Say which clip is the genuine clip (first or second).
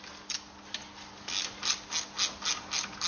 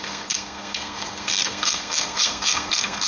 first